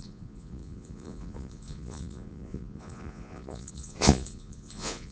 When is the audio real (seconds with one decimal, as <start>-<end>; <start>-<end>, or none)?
none